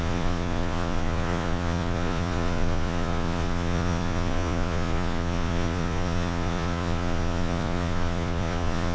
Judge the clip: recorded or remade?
remade